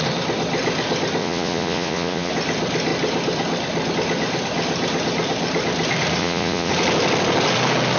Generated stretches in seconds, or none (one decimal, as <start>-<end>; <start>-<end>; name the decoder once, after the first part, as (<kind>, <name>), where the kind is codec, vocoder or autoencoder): 1.2-2.3 (vocoder, Vocos); 6.2-6.7